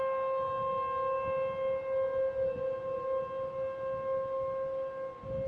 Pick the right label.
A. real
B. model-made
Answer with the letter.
A